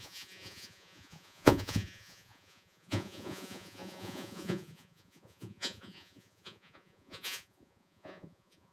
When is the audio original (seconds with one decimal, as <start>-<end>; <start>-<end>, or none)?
none